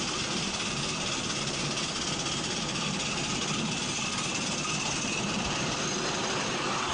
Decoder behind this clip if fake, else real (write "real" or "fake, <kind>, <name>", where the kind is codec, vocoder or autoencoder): real